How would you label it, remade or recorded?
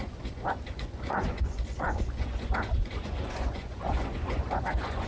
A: remade